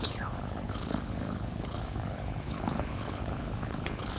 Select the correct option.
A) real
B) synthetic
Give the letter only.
B